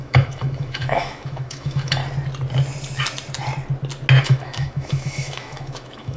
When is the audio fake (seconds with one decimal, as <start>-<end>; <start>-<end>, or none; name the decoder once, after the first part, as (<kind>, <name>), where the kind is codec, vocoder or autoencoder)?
0.0-2.0 (autoencoder, DAC-VAE); 4.2-6.2